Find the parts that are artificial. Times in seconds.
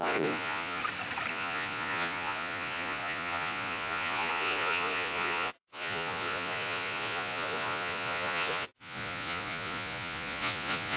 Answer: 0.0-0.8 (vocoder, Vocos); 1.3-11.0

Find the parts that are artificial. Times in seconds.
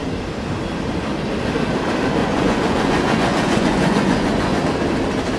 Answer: 2.2-4.6 (vocoder, Vocos)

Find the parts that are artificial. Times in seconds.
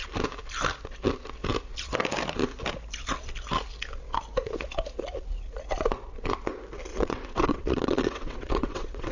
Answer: 6.9-9.1 (vocoder, WaveNeXt)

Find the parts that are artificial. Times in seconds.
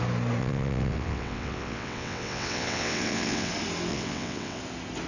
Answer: 0.4-3.5 (vocoder, WaveNeXt); 3.9-4.6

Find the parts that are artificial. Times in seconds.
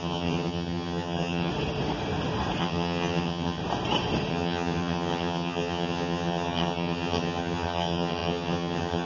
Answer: 0.0-1.5 (vocoder, HiFi-GAN); 2.6-3.6; 4.3-9.1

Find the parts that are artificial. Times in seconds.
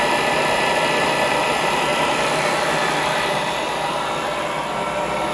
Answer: none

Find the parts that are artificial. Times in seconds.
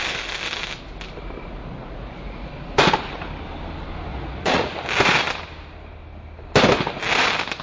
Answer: 1.6-2.5 (vocoder, Vocos); 4.1-4.7